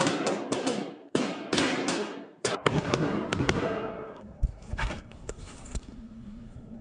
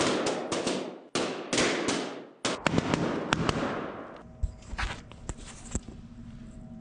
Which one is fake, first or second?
first